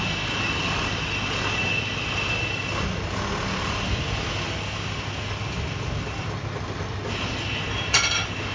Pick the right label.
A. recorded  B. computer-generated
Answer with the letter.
A